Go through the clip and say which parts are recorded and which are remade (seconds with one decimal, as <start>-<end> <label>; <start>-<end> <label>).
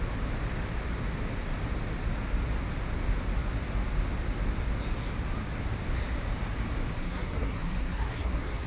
0.0-7.0 recorded; 7.0-8.7 remade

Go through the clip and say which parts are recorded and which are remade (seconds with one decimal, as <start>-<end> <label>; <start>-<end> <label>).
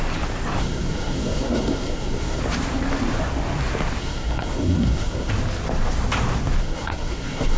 0.0-0.6 recorded; 0.6-2.4 remade; 2.4-4.0 recorded; 4.0-5.3 remade; 5.3-6.6 recorded; 6.6-7.6 remade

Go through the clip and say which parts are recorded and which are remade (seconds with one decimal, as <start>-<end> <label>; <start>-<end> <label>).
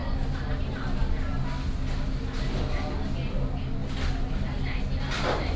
0.0-5.6 recorded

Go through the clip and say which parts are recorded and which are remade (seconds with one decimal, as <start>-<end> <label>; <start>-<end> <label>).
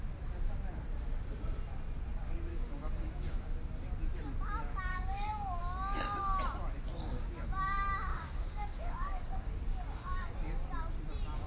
0.0-2.5 recorded; 2.5-3.4 remade; 3.4-4.9 recorded; 4.9-5.6 remade; 5.6-8.1 recorded; 8.1-10.3 remade; 10.3-11.5 recorded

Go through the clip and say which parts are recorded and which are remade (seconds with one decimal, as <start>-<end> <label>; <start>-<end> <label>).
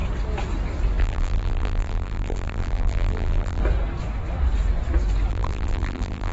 0.0-1.0 recorded; 1.0-3.6 remade; 3.6-5.3 recorded; 5.3-6.3 remade